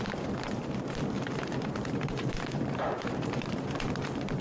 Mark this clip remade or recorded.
remade